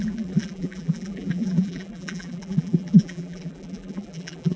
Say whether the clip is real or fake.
fake